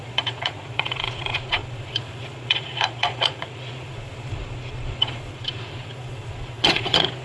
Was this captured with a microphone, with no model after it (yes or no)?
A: no